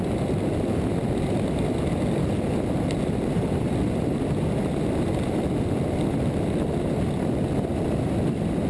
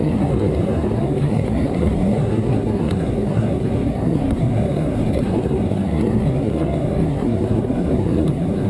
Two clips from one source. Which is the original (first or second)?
first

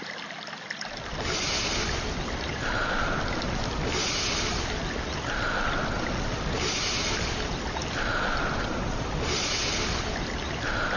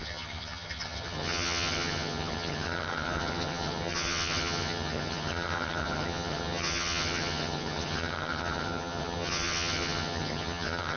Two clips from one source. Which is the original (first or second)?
first